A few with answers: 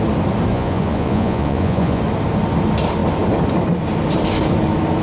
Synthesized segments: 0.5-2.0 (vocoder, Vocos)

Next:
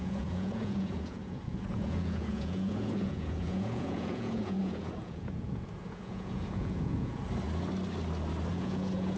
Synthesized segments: 0.0-7.2 (vocoder, Vocos); 8.5-9.2